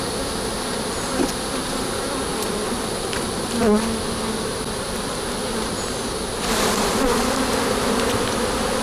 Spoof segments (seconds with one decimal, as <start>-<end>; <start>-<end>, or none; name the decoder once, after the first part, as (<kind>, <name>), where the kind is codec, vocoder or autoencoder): 2.3-3.5 (vocoder, BigVGAN v2)